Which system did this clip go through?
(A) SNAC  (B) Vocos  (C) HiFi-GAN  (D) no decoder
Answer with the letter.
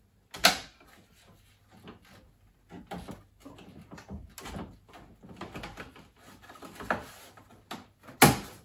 D